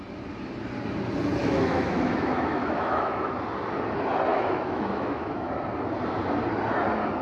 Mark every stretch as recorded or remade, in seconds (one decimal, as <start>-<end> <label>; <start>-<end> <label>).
0.0-1.4 recorded; 1.4-3.3 remade; 3.3-4.3 recorded; 4.3-5.5 remade; 5.5-7.2 recorded